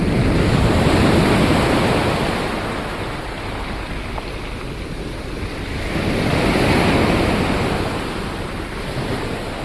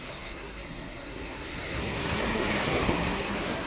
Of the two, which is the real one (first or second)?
first